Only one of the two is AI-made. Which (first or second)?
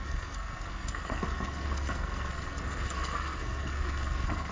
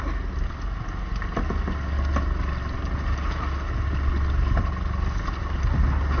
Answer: first